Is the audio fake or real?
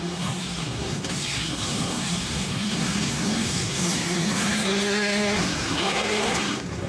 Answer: fake